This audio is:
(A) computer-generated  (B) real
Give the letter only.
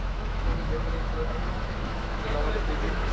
A